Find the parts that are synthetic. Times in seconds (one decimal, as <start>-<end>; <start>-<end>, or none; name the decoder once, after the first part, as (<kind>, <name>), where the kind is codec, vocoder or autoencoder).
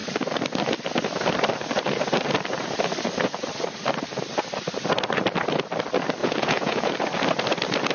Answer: 6.2-6.9 (vocoder, Vocos)